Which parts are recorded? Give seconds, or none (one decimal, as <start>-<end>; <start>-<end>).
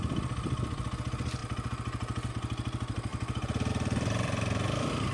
1.4-2.3; 3.1-3.7